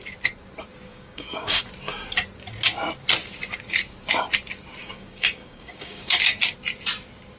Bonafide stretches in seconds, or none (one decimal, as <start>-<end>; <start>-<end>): 0.0-0.9; 1.6-4.8; 6.2-7.4